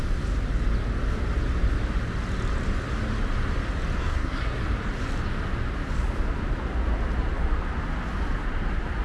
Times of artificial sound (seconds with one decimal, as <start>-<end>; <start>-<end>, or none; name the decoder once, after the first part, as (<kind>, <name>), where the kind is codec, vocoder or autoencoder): 4.0-4.6 (codec, SNAC)